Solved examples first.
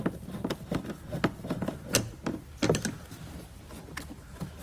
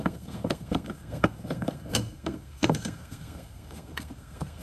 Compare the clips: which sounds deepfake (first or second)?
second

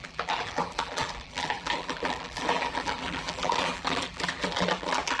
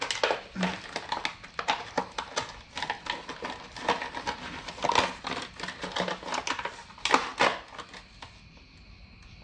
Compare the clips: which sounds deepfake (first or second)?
first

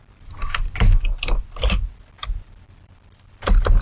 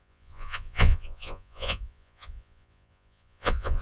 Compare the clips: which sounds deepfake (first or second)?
second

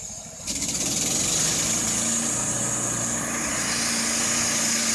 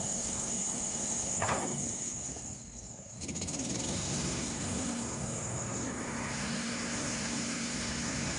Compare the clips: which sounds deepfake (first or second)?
second